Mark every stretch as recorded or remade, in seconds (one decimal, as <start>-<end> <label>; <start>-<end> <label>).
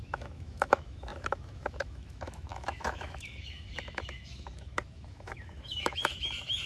0.0-6.7 remade